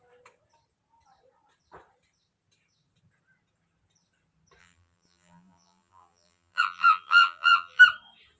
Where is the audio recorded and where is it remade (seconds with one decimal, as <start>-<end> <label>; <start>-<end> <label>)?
0.0-4.6 recorded; 4.6-7.8 remade; 7.8-8.4 recorded